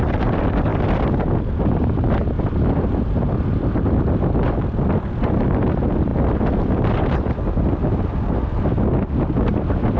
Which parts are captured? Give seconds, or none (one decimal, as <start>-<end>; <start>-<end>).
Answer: 0.0-10.0